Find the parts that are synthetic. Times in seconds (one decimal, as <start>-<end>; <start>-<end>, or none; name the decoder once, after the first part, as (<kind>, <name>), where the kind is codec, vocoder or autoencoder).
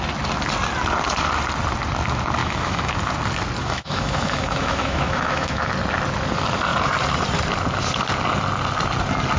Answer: 2.4-2.9 (autoencoder, DAC-VAE); 3.6-5.7